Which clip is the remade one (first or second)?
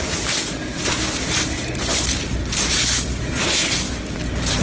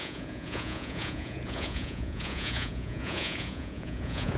second